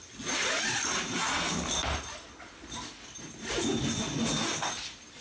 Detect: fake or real real